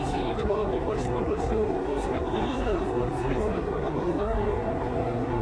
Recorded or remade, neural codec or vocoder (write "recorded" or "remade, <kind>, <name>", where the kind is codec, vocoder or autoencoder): remade, codec, SNAC